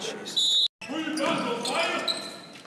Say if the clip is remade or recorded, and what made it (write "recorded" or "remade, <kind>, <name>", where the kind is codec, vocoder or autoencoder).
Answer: recorded